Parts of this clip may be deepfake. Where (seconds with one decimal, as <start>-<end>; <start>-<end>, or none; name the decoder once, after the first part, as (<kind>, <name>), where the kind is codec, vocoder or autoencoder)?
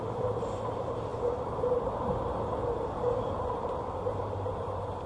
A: 0.0-5.1 (vocoder, BigVGAN v2)